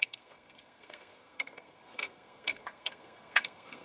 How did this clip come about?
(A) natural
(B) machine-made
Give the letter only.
B